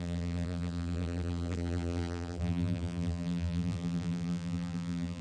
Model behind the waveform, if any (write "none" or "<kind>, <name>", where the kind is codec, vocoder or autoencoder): vocoder, BigVGAN v2